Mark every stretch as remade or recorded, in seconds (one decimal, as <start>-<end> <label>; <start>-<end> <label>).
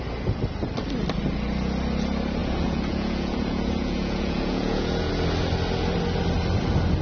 0.0-2.4 recorded; 2.4-5.1 remade; 5.1-7.0 recorded